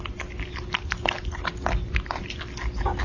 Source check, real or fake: real